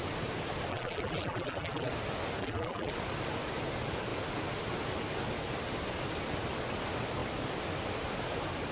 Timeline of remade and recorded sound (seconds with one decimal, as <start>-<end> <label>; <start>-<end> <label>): 0.0-0.7 recorded; 0.7-1.9 remade; 1.9-2.4 recorded; 2.4-2.9 remade; 2.9-8.7 recorded